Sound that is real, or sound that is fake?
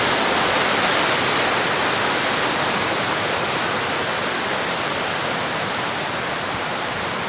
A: real